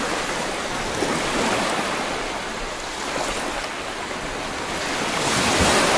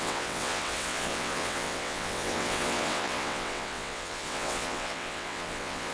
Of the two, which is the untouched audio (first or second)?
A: first